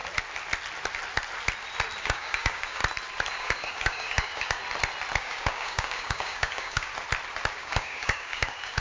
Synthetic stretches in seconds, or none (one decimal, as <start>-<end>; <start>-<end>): 2.0-2.8; 3.3-4.6; 5.2-6.9; 7.5-8.8